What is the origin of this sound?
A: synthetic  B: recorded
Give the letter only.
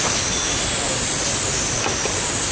B